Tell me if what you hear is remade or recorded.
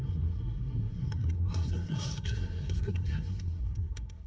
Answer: remade